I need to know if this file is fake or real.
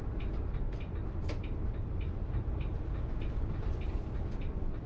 real